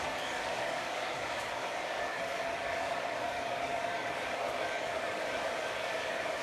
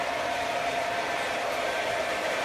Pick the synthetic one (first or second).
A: first